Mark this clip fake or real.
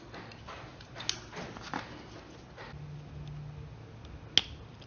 real